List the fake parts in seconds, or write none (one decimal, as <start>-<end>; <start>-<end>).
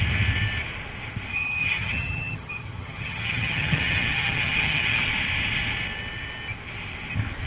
1.3-5.0